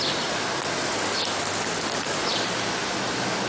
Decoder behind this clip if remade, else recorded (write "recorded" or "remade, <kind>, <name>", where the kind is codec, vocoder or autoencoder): recorded